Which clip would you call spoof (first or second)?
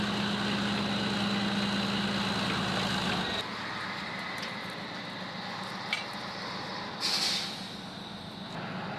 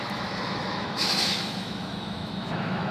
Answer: second